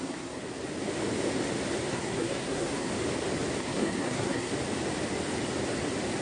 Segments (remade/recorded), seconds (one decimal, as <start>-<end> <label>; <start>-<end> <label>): 0.0-0.4 remade; 0.4-1.9 recorded; 1.9-2.9 remade; 2.9-3.6 recorded; 3.6-4.5 remade; 4.5-6.2 recorded